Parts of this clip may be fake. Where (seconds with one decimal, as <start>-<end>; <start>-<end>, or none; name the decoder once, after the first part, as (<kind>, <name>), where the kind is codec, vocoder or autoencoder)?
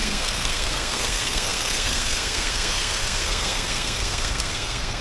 0.0-5.0 (codec, SNAC)